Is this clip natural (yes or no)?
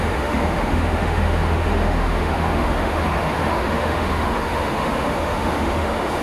no